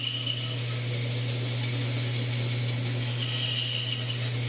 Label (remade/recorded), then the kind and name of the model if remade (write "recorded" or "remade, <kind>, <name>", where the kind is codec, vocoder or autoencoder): recorded